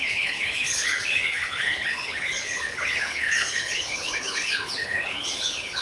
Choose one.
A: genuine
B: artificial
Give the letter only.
B